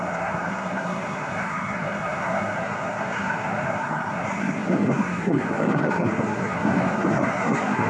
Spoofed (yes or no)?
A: yes